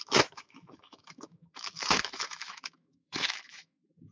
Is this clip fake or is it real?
fake